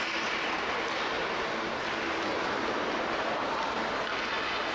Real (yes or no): yes